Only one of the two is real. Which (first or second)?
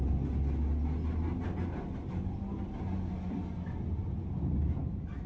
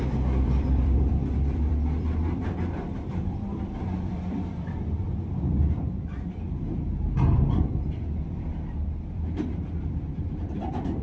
first